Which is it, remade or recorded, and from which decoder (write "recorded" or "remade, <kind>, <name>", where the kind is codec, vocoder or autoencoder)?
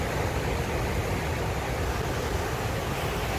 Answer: recorded